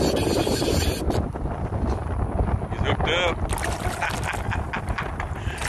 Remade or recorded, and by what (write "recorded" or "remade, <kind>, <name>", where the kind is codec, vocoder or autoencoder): recorded